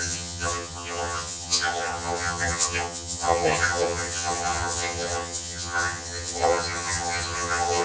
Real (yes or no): no